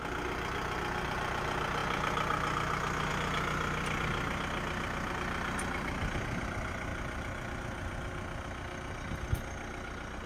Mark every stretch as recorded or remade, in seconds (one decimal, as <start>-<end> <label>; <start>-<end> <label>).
0.0-10.3 recorded